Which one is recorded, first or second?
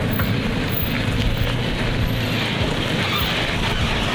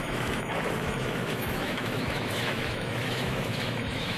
first